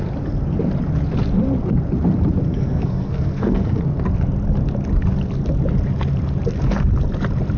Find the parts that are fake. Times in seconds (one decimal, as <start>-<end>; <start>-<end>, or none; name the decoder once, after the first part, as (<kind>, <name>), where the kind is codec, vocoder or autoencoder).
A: 2.5-3.8 (codec, SNAC)